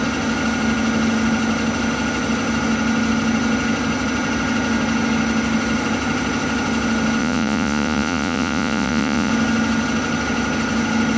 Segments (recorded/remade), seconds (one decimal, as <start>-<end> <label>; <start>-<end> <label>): 0.0-7.2 recorded; 7.2-9.3 remade; 9.3-11.2 recorded